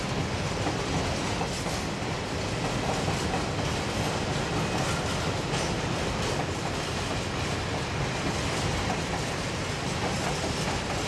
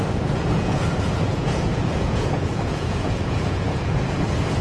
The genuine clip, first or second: first